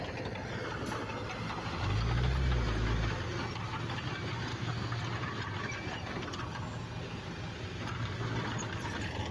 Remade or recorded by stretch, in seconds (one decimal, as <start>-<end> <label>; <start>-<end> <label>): 0.0-4.5 recorded; 4.5-5.0 remade; 5.0-9.3 recorded